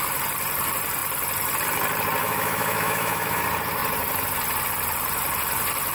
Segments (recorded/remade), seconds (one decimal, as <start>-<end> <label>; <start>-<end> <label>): 0.0-2.2 recorded; 2.2-3.4 remade; 3.4-5.9 recorded